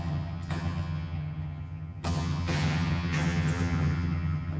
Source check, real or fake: fake